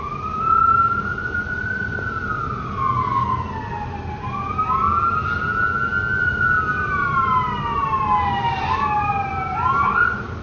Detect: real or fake real